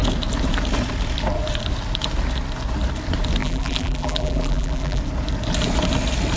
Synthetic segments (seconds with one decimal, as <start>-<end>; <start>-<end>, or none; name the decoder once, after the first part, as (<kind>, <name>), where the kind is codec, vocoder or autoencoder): 3.4-5.0 (vocoder, BigVGAN v2)